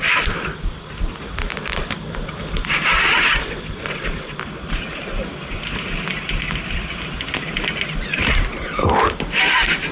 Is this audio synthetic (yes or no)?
no